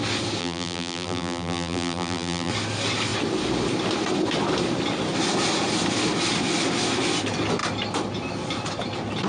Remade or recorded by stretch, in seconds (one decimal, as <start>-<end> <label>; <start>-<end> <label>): 0.0-0.4 recorded; 0.4-2.5 remade; 2.5-9.3 recorded